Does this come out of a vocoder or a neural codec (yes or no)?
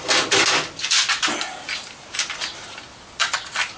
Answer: no